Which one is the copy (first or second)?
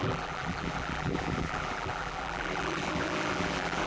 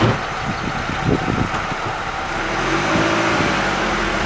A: first